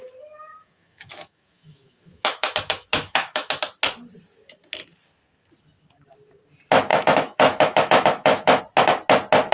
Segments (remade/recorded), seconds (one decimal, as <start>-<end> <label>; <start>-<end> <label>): 0.0-0.6 recorded; 0.6-3.6 remade; 3.6-6.9 recorded; 6.9-8.6 remade; 8.6-9.5 recorded